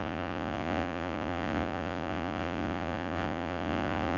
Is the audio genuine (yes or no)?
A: no